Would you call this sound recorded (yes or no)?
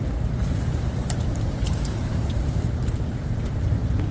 no